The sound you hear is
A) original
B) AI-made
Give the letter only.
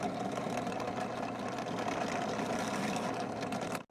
A